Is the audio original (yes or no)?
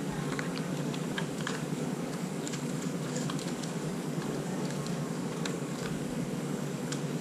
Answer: no